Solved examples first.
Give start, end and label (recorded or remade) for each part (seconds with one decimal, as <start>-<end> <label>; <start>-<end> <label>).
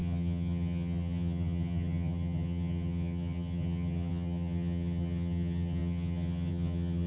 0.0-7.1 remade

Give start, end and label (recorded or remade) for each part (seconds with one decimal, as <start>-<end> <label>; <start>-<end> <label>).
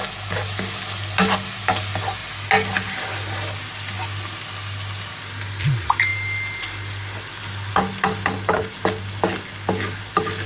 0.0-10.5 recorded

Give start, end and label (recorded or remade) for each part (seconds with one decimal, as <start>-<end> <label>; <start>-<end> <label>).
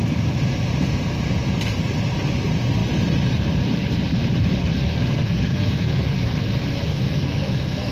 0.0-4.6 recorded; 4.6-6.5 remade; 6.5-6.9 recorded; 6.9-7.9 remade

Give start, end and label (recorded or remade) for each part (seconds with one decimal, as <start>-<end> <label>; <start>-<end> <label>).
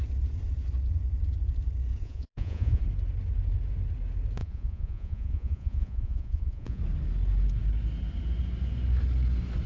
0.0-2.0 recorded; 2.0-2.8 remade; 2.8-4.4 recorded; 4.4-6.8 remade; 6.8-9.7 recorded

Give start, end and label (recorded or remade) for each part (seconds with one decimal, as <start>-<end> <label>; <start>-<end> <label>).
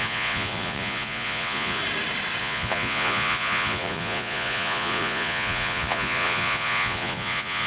0.0-1.8 remade; 1.8-2.4 recorded; 2.4-7.7 remade